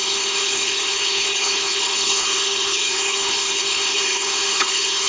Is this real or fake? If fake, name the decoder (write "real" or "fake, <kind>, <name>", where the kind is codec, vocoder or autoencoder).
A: fake, codec, HILCodec